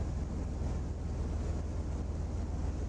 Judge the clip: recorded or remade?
recorded